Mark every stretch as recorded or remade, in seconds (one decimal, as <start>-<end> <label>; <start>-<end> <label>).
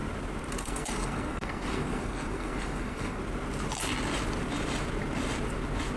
0.0-0.6 recorded; 0.6-3.2 remade; 3.2-6.0 recorded